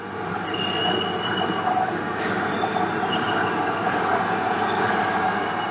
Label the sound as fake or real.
real